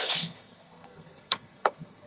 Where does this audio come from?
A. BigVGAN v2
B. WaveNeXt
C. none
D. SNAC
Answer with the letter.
D